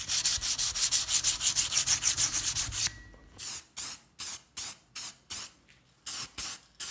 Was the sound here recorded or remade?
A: recorded